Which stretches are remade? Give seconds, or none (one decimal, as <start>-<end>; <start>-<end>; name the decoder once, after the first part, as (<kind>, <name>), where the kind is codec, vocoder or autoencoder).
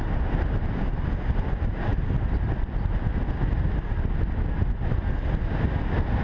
none